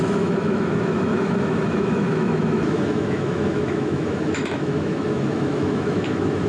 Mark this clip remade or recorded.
remade